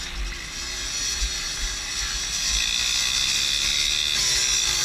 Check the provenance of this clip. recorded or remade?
recorded